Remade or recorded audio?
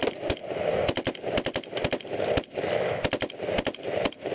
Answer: recorded